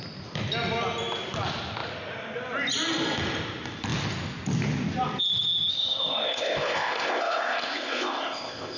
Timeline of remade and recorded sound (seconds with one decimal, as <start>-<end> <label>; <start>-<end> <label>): 0.0-5.7 recorded; 5.7-8.8 remade